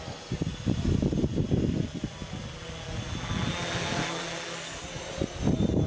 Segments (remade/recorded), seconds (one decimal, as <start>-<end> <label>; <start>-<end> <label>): 0.0-5.9 recorded